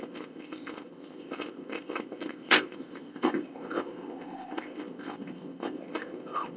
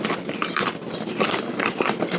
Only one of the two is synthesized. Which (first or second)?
first